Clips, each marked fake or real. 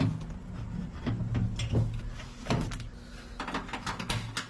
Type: real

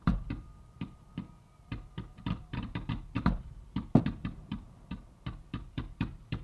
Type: fake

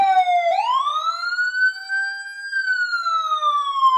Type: real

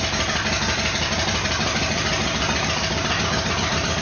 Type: fake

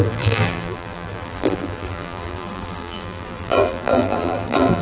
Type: fake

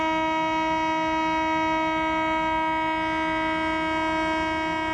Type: real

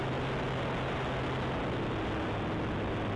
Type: real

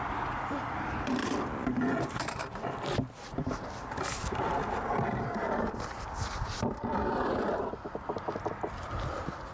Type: fake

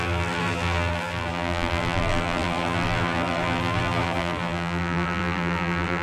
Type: fake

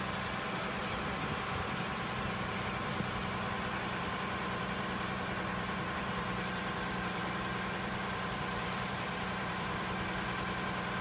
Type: fake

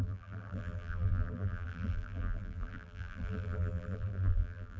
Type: fake